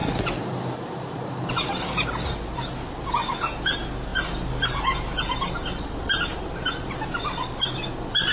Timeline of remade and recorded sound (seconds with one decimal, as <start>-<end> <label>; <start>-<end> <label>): 0.0-1.3 remade; 1.3-8.3 recorded